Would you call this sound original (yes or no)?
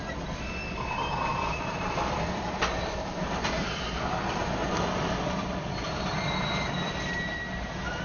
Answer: no